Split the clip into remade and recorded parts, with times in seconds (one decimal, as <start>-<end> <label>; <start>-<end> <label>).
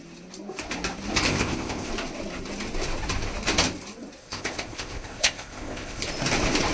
0.0-1.3 recorded; 1.3-1.9 remade; 1.9-4.2 recorded; 4.2-6.0 remade; 6.0-6.7 recorded